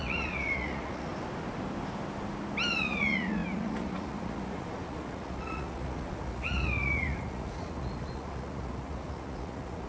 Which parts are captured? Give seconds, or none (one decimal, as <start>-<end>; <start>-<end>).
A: 1.1-2.7